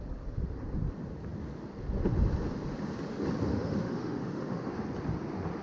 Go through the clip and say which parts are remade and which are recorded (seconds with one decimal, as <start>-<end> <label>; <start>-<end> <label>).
0.0-3.5 recorded; 3.5-4.7 remade; 4.7-5.6 recorded